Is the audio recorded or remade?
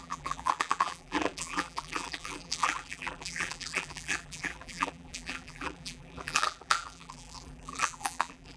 remade